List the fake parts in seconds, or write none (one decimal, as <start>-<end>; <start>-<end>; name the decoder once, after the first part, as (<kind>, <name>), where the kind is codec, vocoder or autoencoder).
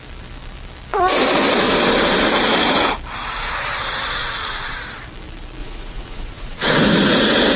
4.2-4.8 (vocoder, Vocos); 5.6-6.8